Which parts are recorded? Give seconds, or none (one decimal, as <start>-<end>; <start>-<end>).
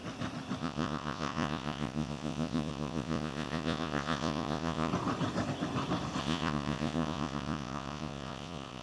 0.0-0.6; 4.9-6.2